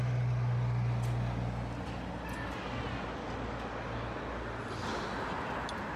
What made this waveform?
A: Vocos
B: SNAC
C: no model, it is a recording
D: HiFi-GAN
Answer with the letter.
C